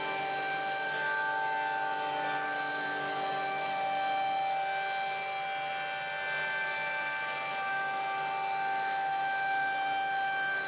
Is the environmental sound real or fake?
real